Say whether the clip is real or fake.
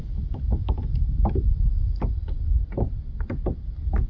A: real